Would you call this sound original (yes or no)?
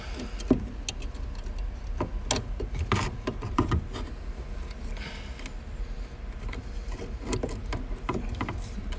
yes